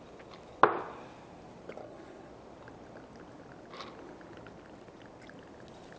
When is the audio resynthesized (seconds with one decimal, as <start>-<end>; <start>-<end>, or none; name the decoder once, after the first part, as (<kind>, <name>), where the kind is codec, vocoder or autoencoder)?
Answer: 1.8-2.3 (codec, HILCodec)